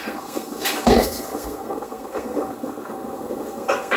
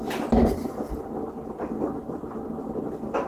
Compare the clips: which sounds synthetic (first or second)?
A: first